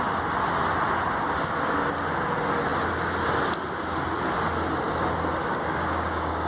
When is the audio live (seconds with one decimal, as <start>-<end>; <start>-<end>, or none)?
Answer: 0.0-5.4